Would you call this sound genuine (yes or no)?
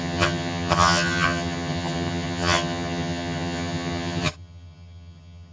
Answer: no